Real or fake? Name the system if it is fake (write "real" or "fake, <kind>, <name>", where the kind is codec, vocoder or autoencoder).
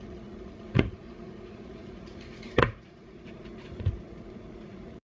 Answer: fake, vocoder, Vocos